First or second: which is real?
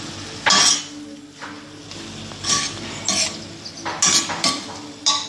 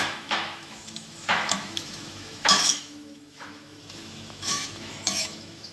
first